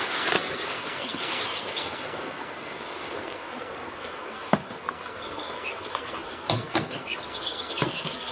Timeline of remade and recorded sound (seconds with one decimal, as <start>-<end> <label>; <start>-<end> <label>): 0.0-8.3 remade